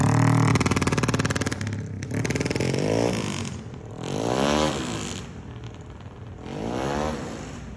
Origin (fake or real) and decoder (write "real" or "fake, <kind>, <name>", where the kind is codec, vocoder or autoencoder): fake, vocoder, BigVGAN v2